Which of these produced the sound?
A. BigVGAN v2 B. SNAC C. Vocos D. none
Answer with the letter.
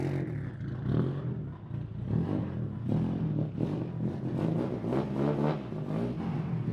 D